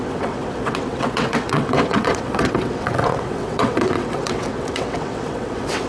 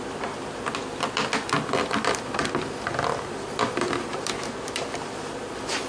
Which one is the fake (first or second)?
first